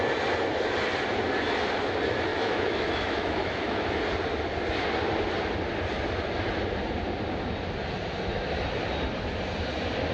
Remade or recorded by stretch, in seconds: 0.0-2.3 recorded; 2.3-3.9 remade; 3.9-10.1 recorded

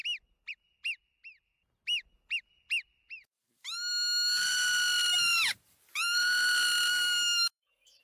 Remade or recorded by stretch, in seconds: 0.0-6.9 recorded; 6.9-8.0 remade

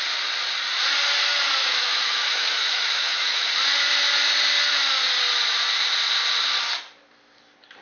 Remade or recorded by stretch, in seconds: 0.0-1.6 recorded; 1.6-3.5 remade; 3.5-7.8 recorded